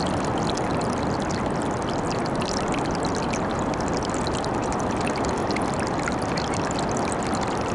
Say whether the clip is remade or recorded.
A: recorded